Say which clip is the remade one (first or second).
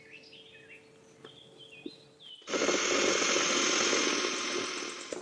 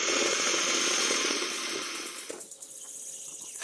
second